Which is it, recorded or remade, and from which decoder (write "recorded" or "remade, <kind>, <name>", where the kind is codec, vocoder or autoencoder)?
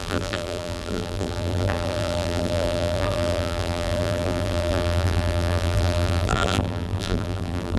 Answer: remade, vocoder, BigVGAN v2